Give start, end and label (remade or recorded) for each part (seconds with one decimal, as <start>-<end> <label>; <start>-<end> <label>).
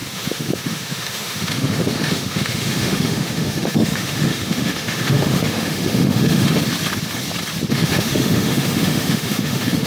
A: 0.0-6.6 remade; 6.6-7.7 recorded; 7.7-9.9 remade